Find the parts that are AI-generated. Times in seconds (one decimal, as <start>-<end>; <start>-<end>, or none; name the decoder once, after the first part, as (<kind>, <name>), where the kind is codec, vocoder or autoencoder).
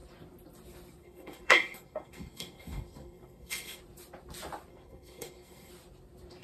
1.0-3.8 (codec, SNAC); 4.7-5.7